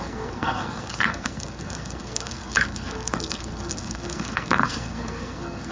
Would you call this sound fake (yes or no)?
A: yes